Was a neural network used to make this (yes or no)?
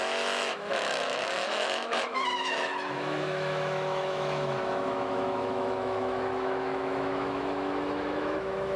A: yes